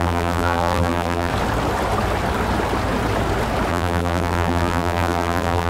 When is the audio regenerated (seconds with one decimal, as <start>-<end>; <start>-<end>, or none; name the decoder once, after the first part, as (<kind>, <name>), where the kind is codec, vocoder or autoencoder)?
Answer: 0.0-1.3 (vocoder, BigVGAN v2); 3.7-5.7